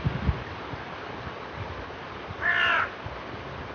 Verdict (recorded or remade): recorded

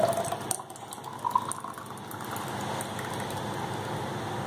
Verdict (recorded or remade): recorded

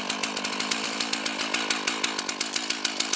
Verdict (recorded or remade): recorded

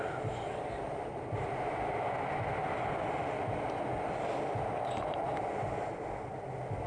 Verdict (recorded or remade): recorded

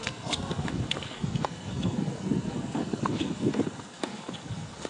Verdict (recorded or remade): remade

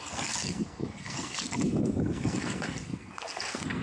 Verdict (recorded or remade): remade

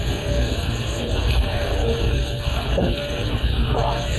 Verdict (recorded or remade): remade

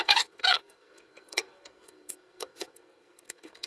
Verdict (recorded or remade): remade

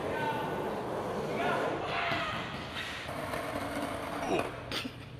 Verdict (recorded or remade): recorded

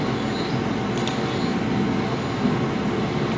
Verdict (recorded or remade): recorded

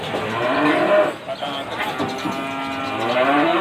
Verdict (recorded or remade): recorded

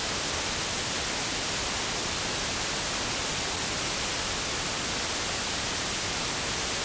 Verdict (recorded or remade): recorded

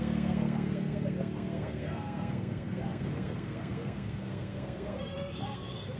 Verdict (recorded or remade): remade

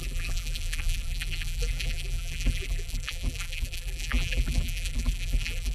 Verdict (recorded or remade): remade